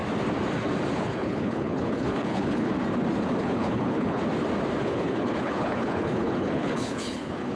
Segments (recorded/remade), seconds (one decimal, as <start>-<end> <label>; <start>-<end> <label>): 0.0-1.0 recorded; 1.0-2.7 remade; 2.7-3.4 recorded; 3.4-4.2 remade; 4.2-4.8 recorded; 4.8-7.6 remade